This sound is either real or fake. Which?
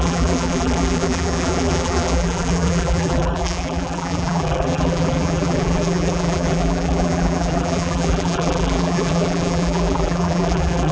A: fake